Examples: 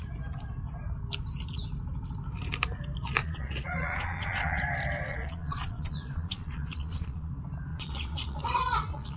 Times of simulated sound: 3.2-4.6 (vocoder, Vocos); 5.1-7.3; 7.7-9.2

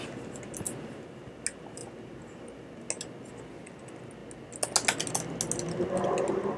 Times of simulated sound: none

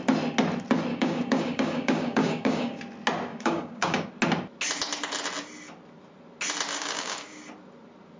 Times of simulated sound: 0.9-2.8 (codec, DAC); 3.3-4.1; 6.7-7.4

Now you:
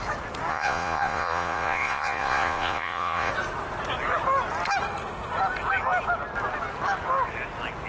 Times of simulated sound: 0.5-3.3 (vocoder, Vocos)